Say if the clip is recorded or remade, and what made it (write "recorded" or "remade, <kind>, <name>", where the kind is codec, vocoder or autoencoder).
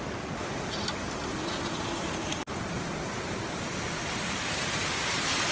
recorded